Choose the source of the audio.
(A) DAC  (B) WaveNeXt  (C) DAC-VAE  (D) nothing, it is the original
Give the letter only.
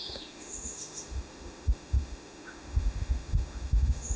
C